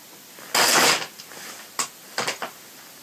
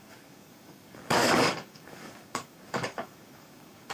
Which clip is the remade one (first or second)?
second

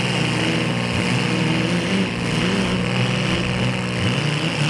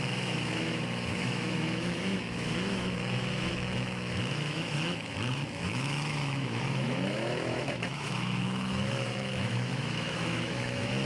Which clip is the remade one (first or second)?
second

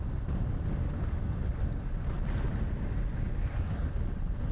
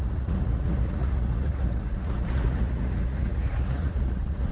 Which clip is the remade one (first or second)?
second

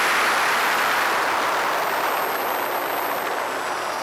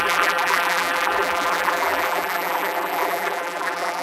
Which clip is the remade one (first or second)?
second